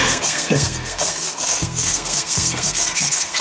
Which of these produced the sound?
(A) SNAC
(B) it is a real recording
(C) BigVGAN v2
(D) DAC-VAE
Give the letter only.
A